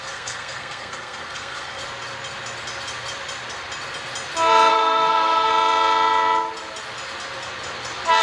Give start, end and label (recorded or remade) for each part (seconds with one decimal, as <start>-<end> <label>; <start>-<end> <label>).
0.0-1.8 remade; 1.8-4.7 recorded; 4.7-5.5 remade; 5.5-8.2 recorded